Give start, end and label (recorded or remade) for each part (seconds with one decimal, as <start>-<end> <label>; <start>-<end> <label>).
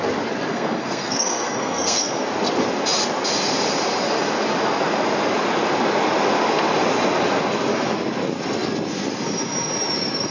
0.0-0.5 recorded; 0.5-2.2 remade; 2.2-10.3 recorded